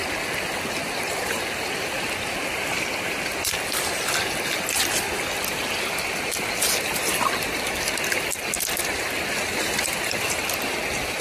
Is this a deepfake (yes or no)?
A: no